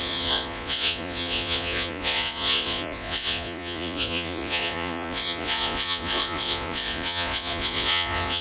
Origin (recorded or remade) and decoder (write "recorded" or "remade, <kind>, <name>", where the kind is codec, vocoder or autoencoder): remade, vocoder, Vocos